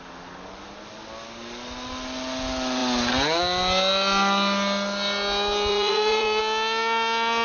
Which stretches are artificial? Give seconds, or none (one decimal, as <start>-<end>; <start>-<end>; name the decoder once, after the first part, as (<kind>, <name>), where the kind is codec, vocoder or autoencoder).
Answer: 5.7-6.4 (vocoder, Vocos)